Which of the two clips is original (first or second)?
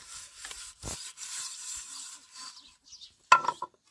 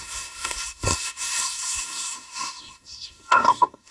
first